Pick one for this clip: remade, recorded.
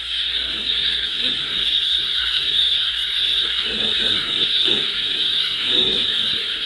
remade